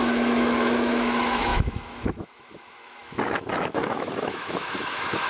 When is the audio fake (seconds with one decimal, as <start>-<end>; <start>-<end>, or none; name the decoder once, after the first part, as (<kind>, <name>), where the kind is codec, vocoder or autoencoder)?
0.0-5.3 (autoencoder, DAC-VAE)